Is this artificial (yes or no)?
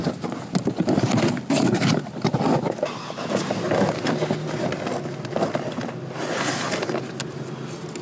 no